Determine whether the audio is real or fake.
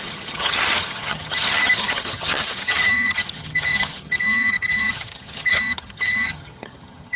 fake